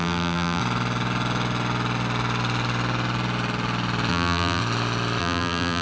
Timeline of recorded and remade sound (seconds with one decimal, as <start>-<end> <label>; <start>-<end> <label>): 0.0-0.6 remade; 0.6-4.1 recorded; 4.1-4.6 remade; 4.6-5.2 recorded; 5.2-5.8 remade